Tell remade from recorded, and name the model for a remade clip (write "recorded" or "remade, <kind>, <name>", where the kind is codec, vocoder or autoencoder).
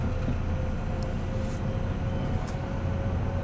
recorded